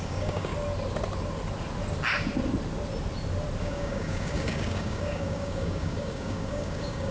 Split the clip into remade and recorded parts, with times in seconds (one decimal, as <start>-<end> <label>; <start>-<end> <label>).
0.0-0.5 remade; 0.5-3.6 recorded; 3.6-7.1 remade